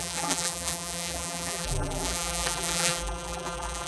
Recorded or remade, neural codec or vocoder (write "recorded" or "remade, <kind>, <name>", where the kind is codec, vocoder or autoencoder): remade, vocoder, BigVGAN v2